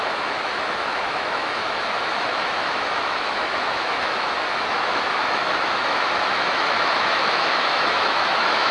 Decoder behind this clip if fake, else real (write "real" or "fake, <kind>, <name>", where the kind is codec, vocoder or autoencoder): fake, autoencoder, DAC-VAE